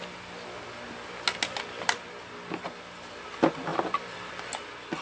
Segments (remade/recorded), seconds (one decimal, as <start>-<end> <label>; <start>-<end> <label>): 0.0-3.7 recorded; 3.7-4.3 remade; 4.3-5.0 recorded